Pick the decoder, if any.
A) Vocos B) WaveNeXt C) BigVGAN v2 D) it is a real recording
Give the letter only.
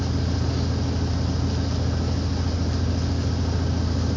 D